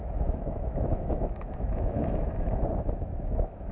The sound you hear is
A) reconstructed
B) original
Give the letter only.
A